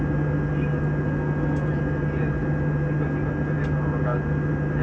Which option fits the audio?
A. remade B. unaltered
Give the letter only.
B